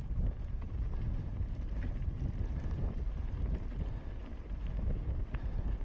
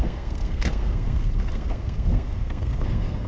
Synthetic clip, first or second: second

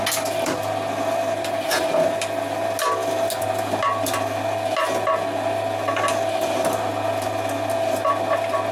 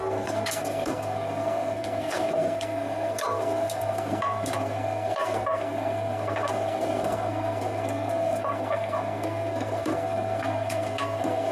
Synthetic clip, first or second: second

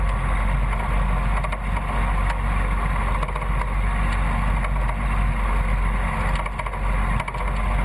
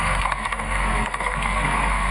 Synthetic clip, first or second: second